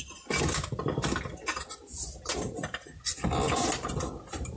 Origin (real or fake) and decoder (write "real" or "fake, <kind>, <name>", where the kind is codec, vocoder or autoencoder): real